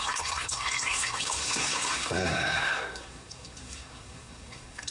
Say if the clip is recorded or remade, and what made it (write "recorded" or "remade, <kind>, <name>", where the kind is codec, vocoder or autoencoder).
remade, codec, SNAC